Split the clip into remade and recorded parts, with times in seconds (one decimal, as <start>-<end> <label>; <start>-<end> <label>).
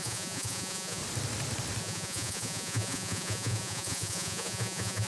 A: 0.0-1.0 remade; 1.0-1.8 recorded; 1.8-5.1 remade